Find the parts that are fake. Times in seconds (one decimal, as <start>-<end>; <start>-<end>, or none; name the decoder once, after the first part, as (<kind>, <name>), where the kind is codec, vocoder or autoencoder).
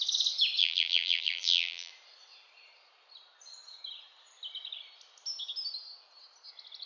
0.6-1.9 (vocoder, BigVGAN v2)